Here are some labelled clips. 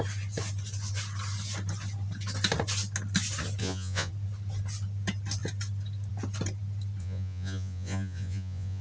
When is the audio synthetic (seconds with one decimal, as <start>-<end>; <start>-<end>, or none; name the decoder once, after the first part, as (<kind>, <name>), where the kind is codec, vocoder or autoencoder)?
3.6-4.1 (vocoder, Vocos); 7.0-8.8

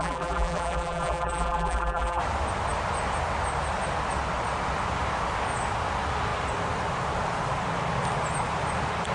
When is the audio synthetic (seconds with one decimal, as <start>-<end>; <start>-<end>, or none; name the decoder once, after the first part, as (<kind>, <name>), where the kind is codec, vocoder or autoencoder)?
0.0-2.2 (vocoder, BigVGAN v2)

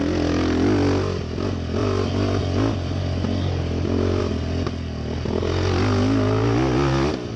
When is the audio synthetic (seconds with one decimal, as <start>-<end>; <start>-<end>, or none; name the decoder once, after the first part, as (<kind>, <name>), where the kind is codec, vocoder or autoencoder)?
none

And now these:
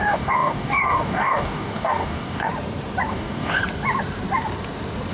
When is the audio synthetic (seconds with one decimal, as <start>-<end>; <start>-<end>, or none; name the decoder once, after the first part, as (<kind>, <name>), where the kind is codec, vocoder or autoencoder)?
0.0-2.5 (codec, DAC); 3.1-3.6

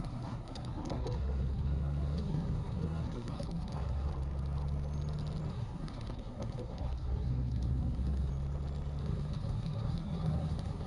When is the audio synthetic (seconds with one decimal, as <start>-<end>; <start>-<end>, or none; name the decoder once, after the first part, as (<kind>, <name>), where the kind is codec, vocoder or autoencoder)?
0.0-4.1 (codec, SNAC); 5.5-8.3; 9.0-10.9

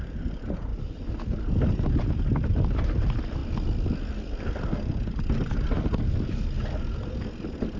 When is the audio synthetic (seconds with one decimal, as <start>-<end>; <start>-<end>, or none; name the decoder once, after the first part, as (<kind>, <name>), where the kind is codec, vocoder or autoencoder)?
none